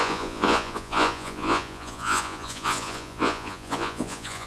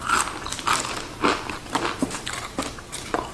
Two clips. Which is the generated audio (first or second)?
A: first